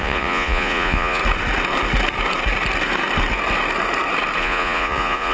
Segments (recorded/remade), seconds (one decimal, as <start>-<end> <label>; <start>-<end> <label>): 0.0-1.2 remade; 1.2-4.4 recorded; 4.4-5.3 remade